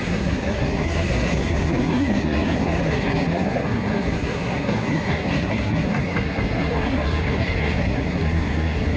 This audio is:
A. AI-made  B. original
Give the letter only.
A